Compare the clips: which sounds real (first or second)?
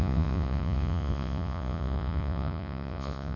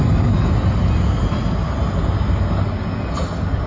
second